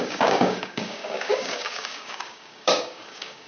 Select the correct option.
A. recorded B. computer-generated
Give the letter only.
B